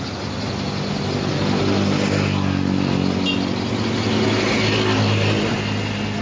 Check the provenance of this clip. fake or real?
real